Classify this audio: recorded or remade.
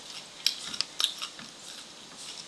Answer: recorded